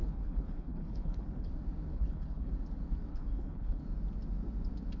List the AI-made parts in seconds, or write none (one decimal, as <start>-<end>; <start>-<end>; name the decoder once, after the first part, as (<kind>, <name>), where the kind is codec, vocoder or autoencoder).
0.0-1.5 (codec, HILCodec); 1.9-2.5; 3.1-3.8